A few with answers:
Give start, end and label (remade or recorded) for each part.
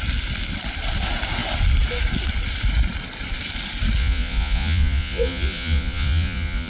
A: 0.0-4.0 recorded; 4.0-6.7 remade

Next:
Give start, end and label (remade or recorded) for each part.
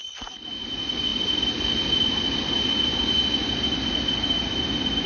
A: 0.0-5.1 recorded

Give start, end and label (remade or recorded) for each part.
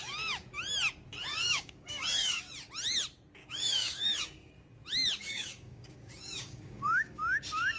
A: 0.0-1.3 recorded; 1.3-2.5 remade; 2.5-3.4 recorded; 3.4-4.5 remade; 4.5-5.2 recorded; 5.2-7.2 remade; 7.2-7.8 recorded